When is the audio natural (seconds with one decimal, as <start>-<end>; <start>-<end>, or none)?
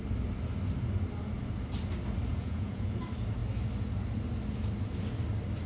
0.0-2.3; 3.0-5.7